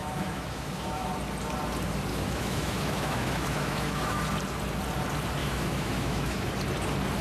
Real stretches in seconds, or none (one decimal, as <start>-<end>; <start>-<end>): 1.1-2.1; 4.2-5.4; 6.5-7.2